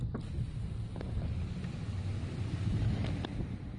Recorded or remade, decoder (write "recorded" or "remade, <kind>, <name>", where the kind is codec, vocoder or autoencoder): recorded